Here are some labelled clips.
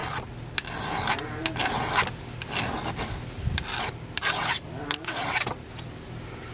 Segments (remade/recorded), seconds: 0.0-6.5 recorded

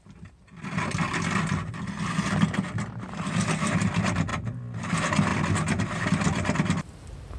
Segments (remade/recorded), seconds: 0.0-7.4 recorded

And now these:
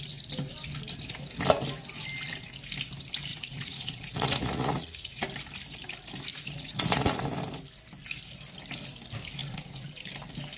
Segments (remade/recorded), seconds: 0.0-3.3 recorded; 3.3-5.2 remade; 5.2-6.3 recorded; 6.3-7.2 remade; 7.2-9.4 recorded; 9.4-10.0 remade; 10.0-10.6 recorded